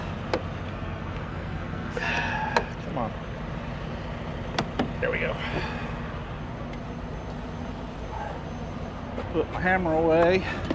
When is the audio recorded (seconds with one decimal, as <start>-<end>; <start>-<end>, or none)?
0.0-0.7; 2.3-10.7